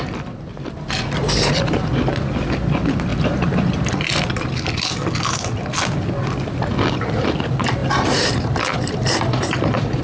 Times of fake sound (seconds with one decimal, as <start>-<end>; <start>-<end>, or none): 3.1-3.8; 7.8-10.0